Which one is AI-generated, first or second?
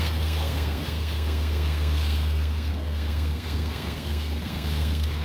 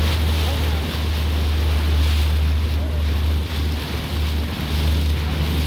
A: first